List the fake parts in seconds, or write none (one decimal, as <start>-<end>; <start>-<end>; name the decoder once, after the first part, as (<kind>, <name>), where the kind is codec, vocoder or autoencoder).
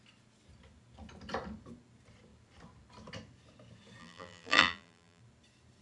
4.0-5.2 (vocoder, BigVGAN v2)